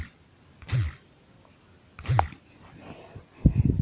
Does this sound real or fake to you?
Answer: real